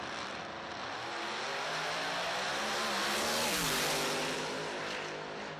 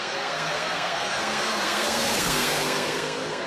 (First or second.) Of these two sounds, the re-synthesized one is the second